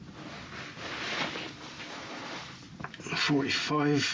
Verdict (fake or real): real